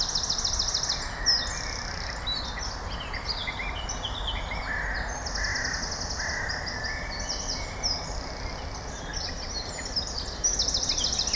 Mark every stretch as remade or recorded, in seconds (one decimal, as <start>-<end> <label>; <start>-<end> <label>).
0.0-11.4 recorded